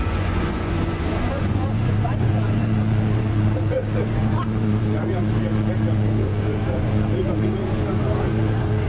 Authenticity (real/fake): fake